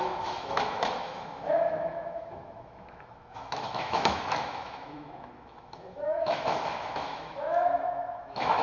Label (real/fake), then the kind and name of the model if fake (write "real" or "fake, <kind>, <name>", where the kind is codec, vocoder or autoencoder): fake, autoencoder, DAC-VAE